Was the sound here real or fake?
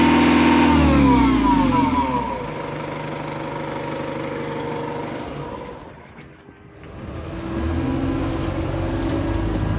real